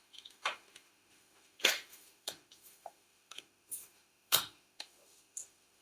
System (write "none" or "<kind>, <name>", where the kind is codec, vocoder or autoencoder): autoencoder, DAC-VAE